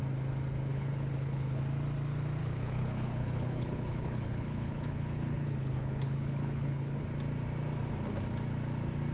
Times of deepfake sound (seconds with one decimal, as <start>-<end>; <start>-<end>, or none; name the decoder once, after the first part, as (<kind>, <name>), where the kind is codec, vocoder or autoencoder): 0.7-1.6 (codec, HILCodec); 2.4-7.0